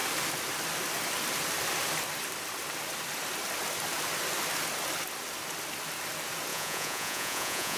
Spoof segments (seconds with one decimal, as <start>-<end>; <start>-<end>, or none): 6.5-7.8

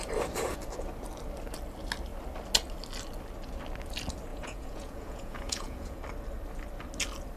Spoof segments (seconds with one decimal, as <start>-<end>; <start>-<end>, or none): 4.3-6.0